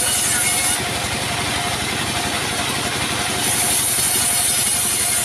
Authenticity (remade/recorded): recorded